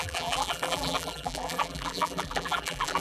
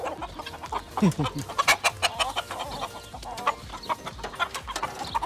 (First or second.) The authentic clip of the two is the second